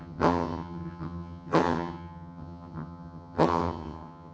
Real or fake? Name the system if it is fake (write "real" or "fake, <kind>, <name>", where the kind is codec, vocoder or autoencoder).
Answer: fake, vocoder, HiFi-GAN